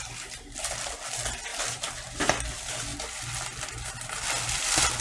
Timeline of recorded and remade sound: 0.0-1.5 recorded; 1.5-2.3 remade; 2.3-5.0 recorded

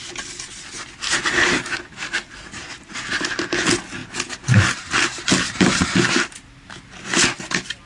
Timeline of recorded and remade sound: 0.0-7.9 recorded

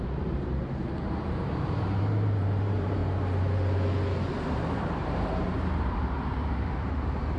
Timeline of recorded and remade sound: 0.0-3.0 remade; 3.0-4.4 recorded; 4.4-7.4 remade

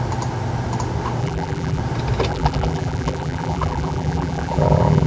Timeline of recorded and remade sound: 0.0-1.2 recorded; 1.2-1.8 remade; 1.8-2.3 recorded; 2.3-5.1 remade

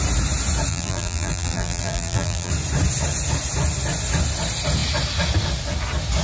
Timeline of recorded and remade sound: 0.0-0.7 recorded; 0.7-2.5 remade; 2.5-6.2 recorded

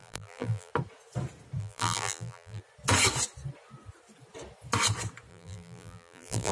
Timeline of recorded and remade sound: 0.0-0.7 remade; 0.7-1.6 recorded; 1.6-2.6 remade; 2.6-5.3 recorded; 5.3-6.5 remade

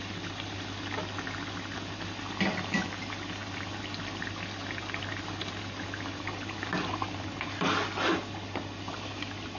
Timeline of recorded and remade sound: 0.0-9.6 recorded